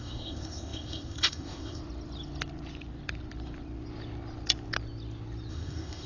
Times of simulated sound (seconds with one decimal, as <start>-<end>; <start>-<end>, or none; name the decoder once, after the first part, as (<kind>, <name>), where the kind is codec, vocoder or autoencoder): 0.0-1.8 (codec, ZipCodec); 5.5-6.1